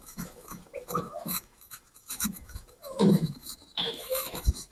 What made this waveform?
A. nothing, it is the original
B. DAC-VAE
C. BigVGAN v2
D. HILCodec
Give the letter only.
B